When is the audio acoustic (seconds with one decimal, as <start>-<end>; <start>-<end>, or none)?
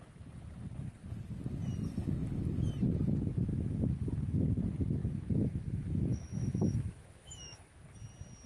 0.0-3.5; 4.4-5.0; 7.8-8.5